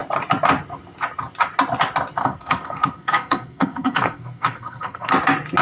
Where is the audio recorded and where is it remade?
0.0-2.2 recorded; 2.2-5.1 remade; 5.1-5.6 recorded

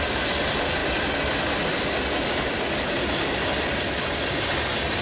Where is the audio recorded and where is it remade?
0.0-5.0 recorded

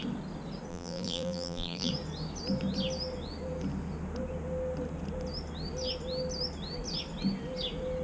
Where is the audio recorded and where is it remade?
0.0-0.7 recorded; 0.7-1.9 remade; 1.9-8.0 recorded